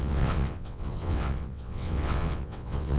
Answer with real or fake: fake